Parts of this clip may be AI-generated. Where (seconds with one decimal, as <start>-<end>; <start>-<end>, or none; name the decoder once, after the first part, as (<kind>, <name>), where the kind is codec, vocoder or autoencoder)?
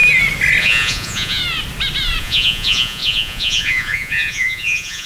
0.6-1.4 (vocoder, Vocos); 2.2-5.1